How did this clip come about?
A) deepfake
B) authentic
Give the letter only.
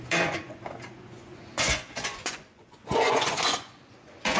A